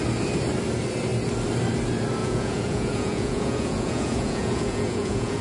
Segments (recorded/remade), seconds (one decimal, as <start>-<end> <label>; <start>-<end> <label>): 0.0-2.2 recorded; 2.2-5.4 remade